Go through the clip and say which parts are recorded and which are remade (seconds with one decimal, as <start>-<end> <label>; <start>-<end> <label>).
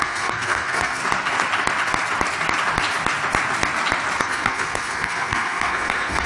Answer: 0.0-1.0 remade; 1.0-4.2 recorded; 4.2-6.3 remade